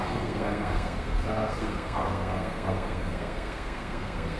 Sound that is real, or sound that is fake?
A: fake